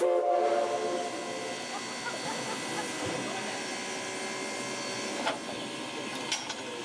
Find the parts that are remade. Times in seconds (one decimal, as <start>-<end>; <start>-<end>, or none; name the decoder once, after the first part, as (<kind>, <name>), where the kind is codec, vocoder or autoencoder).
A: none